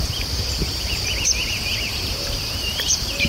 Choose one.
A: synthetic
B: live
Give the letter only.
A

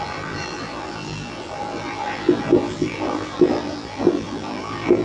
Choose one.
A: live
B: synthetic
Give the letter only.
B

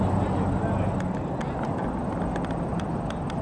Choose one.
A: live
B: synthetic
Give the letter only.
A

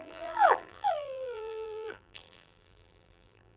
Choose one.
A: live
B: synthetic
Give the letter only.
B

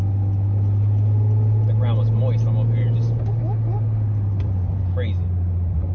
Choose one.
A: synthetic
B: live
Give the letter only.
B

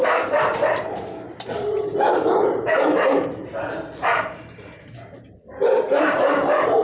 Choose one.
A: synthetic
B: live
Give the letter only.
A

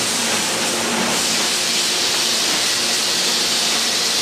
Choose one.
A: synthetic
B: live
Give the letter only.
A